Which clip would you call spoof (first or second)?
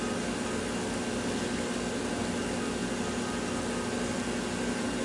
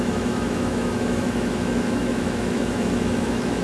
second